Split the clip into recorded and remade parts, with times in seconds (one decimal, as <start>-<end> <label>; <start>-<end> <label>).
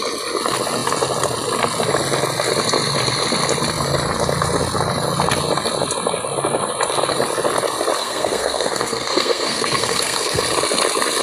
0.0-8.0 recorded; 8.0-10.4 remade; 10.4-11.2 recorded